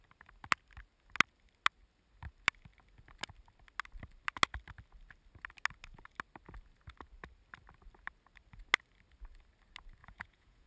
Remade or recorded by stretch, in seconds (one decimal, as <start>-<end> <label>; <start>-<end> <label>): 0.0-10.0 recorded; 10.0-10.7 remade